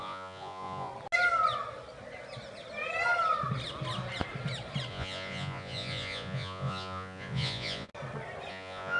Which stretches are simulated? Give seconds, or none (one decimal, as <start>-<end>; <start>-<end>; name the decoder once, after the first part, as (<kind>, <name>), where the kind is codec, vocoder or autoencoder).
0.0-0.9 (vocoder, Vocos); 4.9-7.9; 8.5-9.0

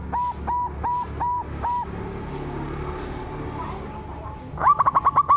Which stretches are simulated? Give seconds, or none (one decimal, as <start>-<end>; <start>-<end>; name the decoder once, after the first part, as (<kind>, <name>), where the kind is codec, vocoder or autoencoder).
none